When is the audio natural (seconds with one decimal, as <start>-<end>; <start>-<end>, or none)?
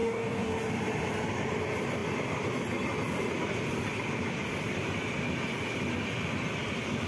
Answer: 0.6-7.1